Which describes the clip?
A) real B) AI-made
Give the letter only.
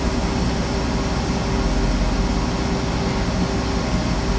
A